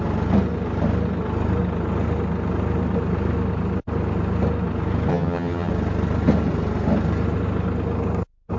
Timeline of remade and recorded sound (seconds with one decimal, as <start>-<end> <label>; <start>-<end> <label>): 0.0-5.1 recorded; 5.1-5.7 remade; 5.7-8.6 recorded